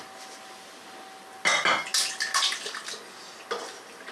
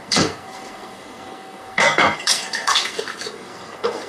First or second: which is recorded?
first